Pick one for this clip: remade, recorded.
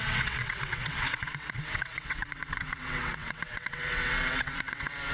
remade